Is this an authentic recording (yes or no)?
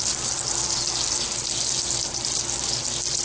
yes